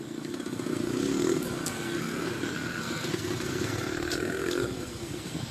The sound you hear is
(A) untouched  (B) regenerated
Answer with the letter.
B